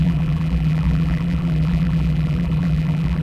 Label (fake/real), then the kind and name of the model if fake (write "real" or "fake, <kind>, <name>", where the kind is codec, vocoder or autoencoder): fake, vocoder, BigVGAN v2